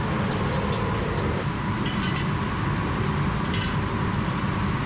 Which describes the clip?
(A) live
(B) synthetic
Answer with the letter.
A